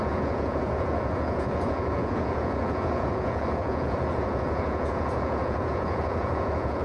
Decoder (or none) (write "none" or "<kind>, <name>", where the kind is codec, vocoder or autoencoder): vocoder, Vocos